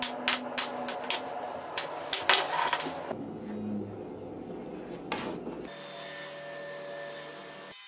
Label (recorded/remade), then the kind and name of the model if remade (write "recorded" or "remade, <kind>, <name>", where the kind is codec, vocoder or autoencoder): recorded